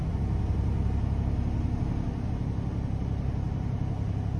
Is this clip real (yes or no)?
yes